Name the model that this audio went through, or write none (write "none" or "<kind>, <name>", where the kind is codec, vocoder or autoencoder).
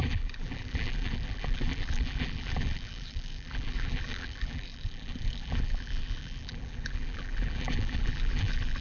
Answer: vocoder, BigVGAN v2